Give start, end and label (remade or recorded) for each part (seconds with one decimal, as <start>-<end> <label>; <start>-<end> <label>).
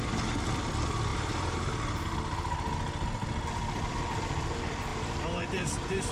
0.0-1.1 recorded; 1.1-1.7 remade; 1.7-4.9 recorded; 4.9-6.1 remade